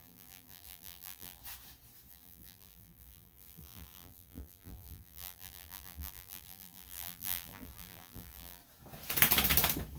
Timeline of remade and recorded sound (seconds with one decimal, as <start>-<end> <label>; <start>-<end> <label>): 0.0-1.4 remade; 1.4-2.1 recorded; 2.1-8.6 remade; 8.6-10.0 recorded